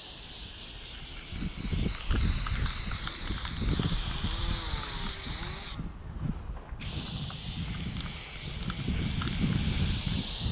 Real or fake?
real